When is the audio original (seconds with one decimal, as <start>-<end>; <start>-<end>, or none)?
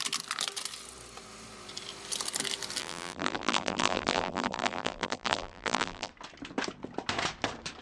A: 0.0-2.8; 6.1-7.8